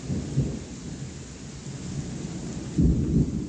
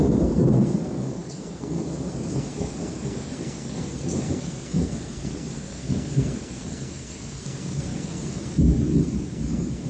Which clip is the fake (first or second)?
second